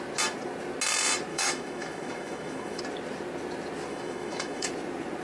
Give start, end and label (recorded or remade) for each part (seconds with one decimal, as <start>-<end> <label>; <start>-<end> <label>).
0.0-1.3 recorded; 1.3-2.8 remade; 2.8-3.9 recorded; 3.9-4.7 remade; 4.7-5.2 recorded